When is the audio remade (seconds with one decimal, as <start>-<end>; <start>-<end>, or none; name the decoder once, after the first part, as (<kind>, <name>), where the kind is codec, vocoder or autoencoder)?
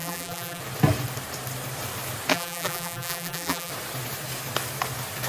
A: 0.0-0.6 (vocoder, BigVGAN v2); 2.3-3.7